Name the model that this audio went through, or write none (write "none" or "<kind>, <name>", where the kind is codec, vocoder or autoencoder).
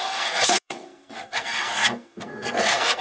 codec, SNAC